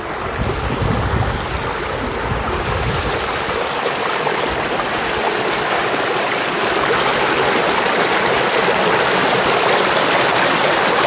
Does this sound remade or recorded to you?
recorded